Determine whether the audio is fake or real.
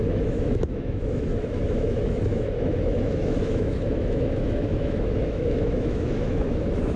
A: fake